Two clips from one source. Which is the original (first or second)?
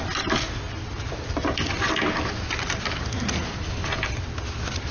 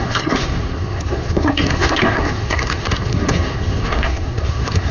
first